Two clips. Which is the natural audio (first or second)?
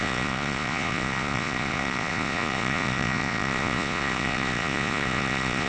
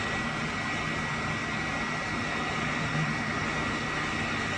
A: second